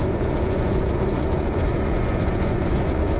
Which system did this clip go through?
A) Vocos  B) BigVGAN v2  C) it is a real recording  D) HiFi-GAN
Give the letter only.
A